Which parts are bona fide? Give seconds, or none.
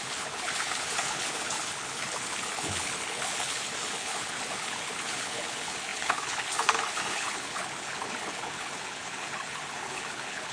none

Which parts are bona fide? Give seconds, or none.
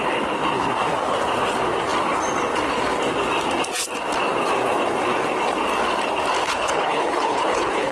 0.0-6.4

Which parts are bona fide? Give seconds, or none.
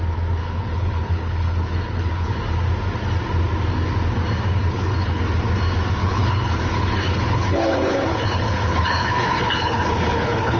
0.0-0.4; 2.3-4.5; 5.2-6.0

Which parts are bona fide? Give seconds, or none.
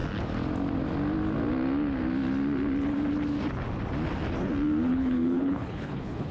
0.0-4.9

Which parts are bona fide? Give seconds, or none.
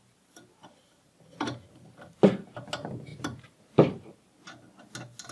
0.0-5.3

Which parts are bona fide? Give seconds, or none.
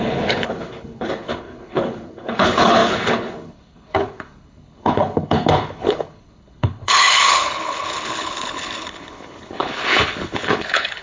none